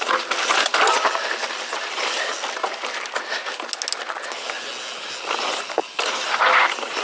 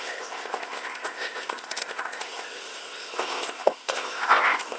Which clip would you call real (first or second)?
first